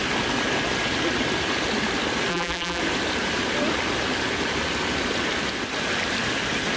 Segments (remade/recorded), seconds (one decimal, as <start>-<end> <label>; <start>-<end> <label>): 0.0-2.3 recorded; 2.3-2.8 remade; 2.8-6.8 recorded